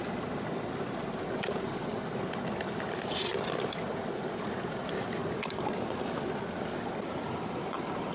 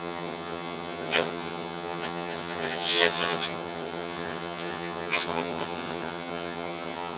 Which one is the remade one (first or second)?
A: second